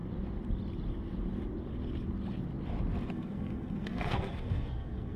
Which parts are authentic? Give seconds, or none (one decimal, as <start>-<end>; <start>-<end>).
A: 0.0-3.1